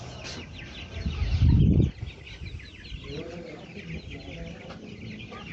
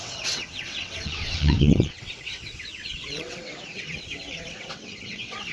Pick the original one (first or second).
first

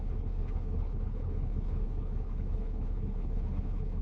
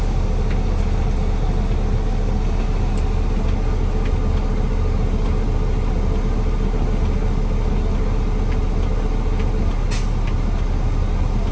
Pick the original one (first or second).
second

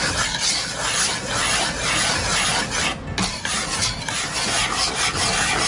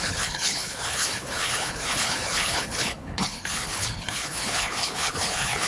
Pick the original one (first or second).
first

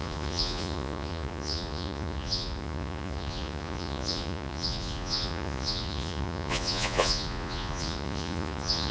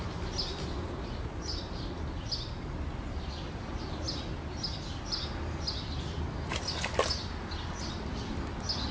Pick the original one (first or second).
second